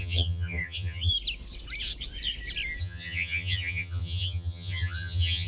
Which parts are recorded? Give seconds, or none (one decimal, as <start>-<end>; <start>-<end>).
1.1-2.8

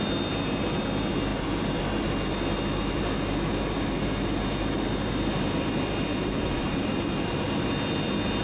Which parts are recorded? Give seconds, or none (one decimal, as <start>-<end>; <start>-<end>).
0.0-6.1; 7.7-8.4

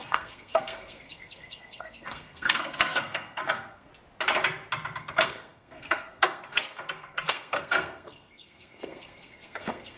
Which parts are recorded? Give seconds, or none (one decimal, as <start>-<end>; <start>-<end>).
3.9-5.0

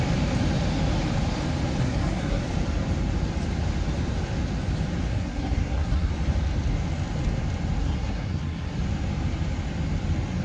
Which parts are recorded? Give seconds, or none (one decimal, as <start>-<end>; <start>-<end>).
0.0-1.8; 2.4-5.1; 6.1-7.8; 8.8-10.4

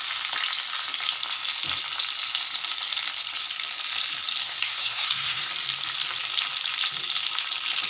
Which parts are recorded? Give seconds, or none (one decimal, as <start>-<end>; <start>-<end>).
0.0-4.4; 5.5-7.9

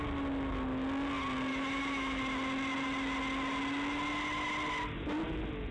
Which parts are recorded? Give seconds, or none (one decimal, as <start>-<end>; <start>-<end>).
0.0-1.5; 2.2-5.7